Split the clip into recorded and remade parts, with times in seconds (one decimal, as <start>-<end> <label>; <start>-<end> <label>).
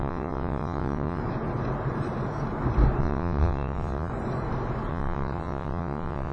0.0-1.2 remade; 1.2-3.0 recorded; 3.0-4.1 remade; 4.1-4.9 recorded; 4.9-6.3 remade